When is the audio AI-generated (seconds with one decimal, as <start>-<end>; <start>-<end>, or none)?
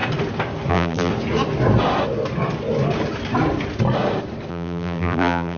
0.7-1.1; 4.5-5.6